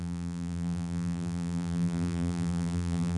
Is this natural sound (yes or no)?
no